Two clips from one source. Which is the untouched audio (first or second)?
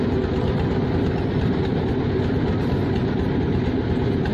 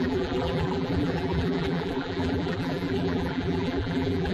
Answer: first